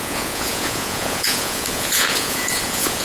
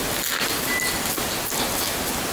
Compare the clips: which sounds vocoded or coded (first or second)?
first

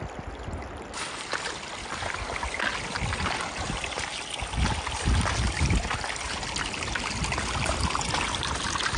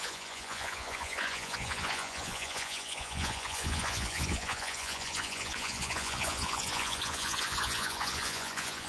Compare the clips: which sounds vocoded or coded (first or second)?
second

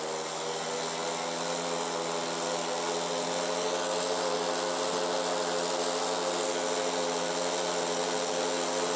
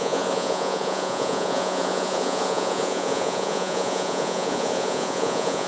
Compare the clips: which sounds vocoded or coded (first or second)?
second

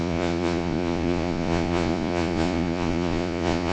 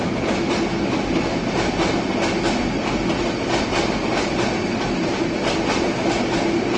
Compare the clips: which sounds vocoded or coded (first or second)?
first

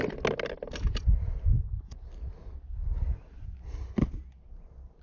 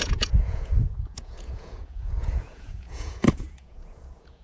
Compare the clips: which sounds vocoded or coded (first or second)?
second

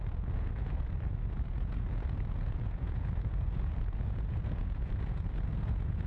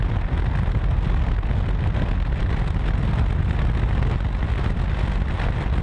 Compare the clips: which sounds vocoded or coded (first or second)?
first